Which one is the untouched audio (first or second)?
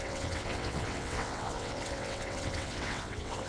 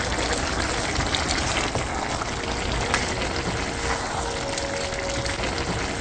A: second